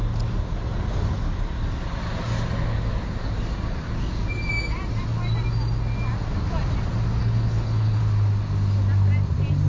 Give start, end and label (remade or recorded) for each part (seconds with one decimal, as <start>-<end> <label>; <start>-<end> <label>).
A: 0.0-7.2 recorded; 7.2-8.0 remade; 8.0-9.7 recorded